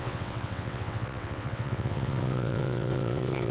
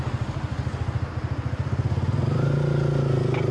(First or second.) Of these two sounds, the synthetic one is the first